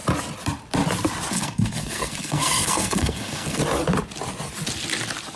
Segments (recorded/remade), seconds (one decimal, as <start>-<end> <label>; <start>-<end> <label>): 0.0-1.3 recorded; 1.3-3.6 remade; 3.6-5.4 recorded